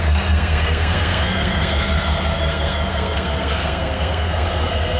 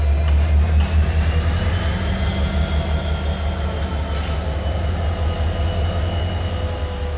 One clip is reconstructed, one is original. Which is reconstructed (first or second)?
first